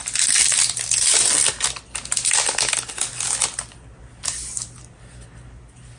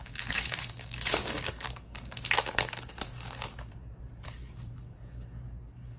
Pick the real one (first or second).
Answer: first